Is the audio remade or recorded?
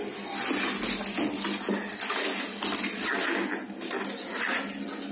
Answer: recorded